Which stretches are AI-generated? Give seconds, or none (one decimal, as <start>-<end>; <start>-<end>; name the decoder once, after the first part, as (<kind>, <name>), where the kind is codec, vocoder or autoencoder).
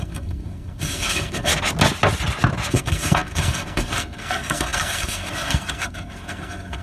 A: 0.0-1.5 (codec, SNAC); 2.7-6.8